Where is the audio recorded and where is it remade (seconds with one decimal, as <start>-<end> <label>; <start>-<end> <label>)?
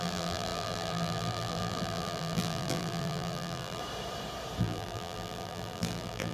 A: 0.0-3.8 remade; 3.8-4.6 recorded; 4.6-6.3 remade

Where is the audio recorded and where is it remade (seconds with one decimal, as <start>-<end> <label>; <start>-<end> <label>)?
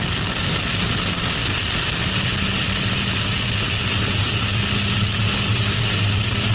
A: 0.0-6.5 recorded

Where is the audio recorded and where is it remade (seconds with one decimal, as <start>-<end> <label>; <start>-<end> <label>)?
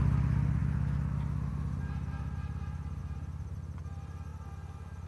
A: 0.0-3.0 recorded; 3.0-3.8 remade; 3.8-5.1 recorded